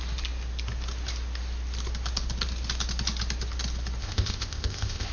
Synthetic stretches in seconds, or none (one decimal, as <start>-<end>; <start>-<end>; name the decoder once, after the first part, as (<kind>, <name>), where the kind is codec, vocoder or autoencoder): 4.0-5.1 (codec, ZipCodec)